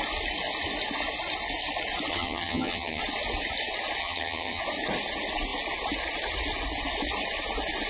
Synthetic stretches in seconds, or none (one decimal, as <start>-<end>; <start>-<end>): 2.1-3.0; 4.0-4.6